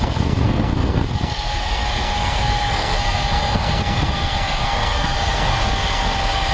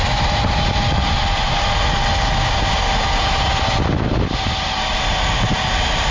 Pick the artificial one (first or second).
first